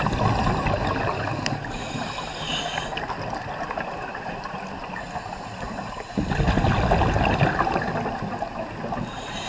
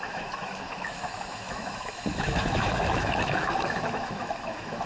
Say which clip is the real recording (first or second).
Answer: first